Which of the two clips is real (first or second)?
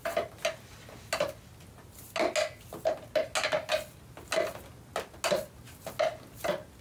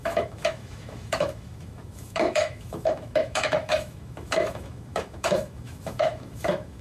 first